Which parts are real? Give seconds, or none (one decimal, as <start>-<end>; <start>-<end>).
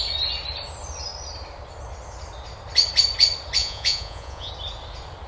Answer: 0.0-3.6; 4.5-5.3